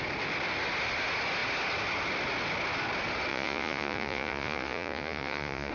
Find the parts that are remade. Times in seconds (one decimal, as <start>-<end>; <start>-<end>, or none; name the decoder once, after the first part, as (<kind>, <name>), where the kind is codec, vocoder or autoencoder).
3.3-5.7 (vocoder, Vocos)